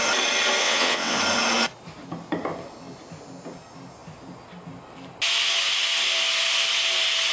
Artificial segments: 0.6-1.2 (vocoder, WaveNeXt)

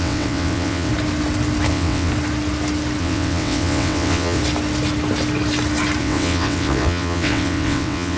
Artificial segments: 0.0-0.9 (vocoder, WaveNeXt); 1.7-2.1; 3.0-4.4; 6.0-8.2